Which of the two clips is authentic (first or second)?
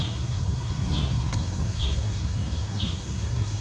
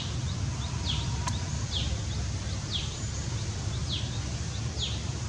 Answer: second